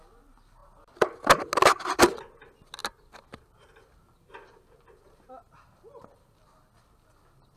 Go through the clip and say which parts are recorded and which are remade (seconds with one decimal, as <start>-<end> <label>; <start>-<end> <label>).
0.0-7.6 recorded